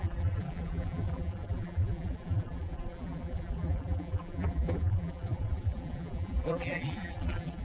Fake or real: fake